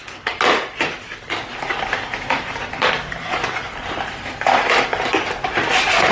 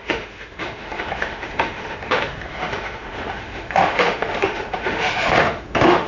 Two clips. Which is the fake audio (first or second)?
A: second